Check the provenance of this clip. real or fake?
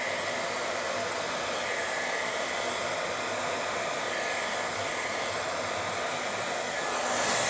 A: real